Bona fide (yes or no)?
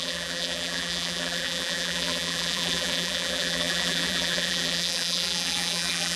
no